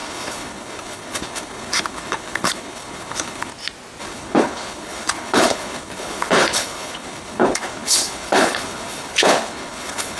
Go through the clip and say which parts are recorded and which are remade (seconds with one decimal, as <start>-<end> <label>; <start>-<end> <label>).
0.0-3.5 remade; 3.5-4.0 recorded; 4.0-10.2 remade